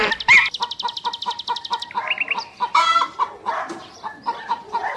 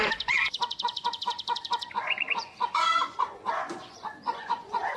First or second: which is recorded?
first